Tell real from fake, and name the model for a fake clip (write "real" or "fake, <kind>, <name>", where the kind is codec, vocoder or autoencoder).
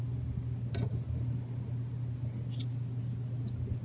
real